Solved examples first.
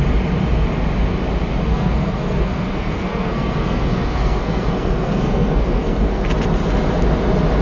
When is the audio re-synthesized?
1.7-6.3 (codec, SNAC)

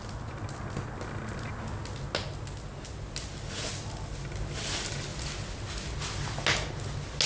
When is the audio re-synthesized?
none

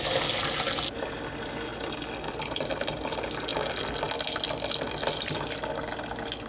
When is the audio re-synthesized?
none

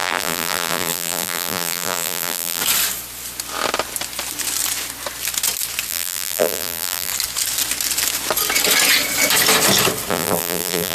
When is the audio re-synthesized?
0.0-2.6 (vocoder, BigVGAN v2); 5.9-7.1; 10.1-10.9